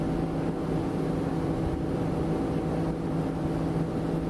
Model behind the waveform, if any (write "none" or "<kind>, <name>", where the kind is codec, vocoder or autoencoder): none